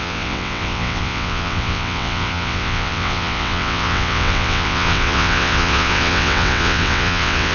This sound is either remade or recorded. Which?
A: remade